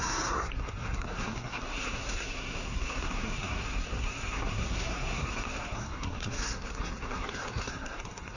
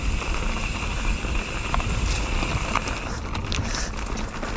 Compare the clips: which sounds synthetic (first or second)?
first